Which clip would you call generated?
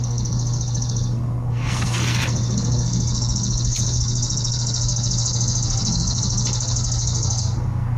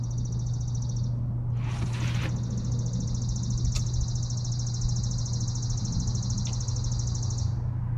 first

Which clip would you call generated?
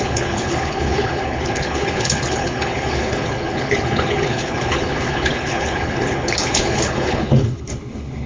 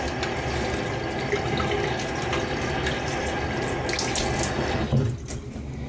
first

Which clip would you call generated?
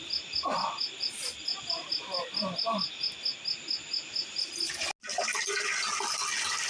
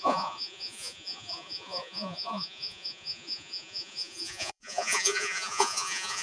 second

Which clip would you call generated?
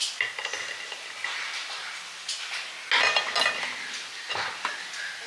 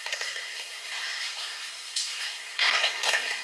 second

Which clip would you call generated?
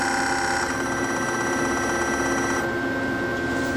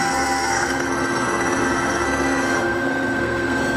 second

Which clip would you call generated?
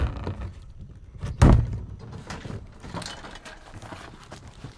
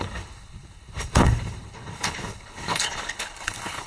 second